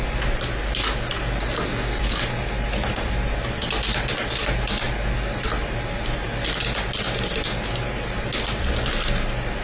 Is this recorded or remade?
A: recorded